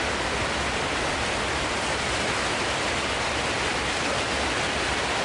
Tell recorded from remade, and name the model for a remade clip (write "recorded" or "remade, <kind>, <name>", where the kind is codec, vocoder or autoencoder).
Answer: recorded